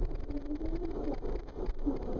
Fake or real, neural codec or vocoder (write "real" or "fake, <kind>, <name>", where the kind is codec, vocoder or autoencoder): fake, vocoder, BigVGAN v2